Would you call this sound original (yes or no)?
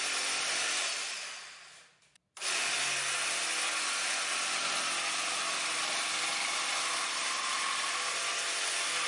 yes